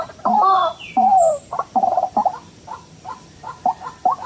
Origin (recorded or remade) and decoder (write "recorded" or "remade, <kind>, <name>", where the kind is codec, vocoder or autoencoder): recorded